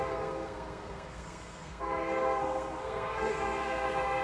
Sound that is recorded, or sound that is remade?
remade